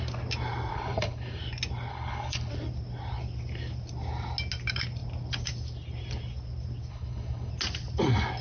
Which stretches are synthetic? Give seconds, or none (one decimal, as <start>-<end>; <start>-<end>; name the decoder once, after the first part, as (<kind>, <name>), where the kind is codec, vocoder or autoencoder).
0.7-1.4 (codec, HILCodec); 1.9-2.5; 6.9-7.5